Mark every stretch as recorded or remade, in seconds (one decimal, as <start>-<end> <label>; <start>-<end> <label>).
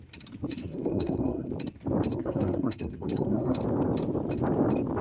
0.0-0.6 recorded; 0.6-1.5 remade; 1.5-2.1 recorded; 2.1-3.6 remade; 3.6-5.0 recorded